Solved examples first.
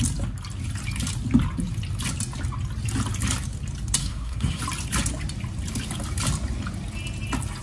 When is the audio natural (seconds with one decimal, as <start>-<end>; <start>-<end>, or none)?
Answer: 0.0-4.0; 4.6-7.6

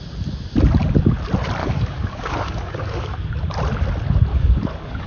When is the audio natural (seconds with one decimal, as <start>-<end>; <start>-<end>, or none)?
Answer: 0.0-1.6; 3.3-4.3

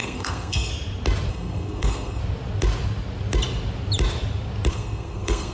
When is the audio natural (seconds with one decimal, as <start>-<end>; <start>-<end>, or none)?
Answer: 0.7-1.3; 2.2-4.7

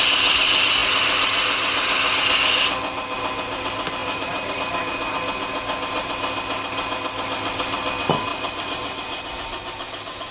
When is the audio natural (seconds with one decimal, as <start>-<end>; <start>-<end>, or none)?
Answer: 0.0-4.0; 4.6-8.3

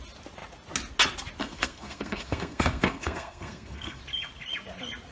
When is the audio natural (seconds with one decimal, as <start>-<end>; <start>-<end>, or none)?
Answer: 0.0-1.4; 4.0-5.1

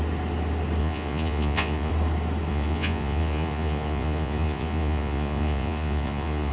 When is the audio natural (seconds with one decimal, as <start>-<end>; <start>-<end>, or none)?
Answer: 0.0-0.8; 1.9-2.5